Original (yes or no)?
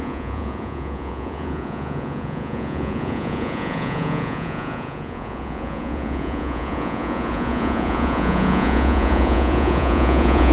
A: no